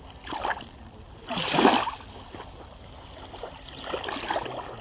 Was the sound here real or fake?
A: real